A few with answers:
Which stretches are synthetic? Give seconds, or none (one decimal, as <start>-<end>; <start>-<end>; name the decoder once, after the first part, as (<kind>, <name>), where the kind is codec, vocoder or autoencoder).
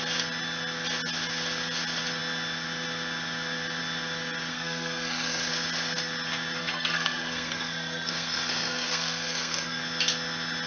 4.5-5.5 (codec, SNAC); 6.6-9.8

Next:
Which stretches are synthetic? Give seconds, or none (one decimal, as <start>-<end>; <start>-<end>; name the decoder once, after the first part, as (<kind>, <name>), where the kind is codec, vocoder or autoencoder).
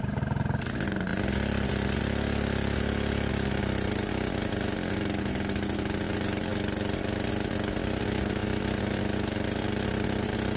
none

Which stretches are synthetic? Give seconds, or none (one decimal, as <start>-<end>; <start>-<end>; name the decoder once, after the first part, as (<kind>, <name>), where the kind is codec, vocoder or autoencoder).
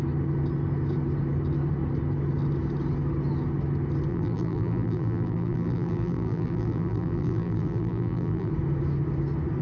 4.1-8.5 (vocoder, BigVGAN v2)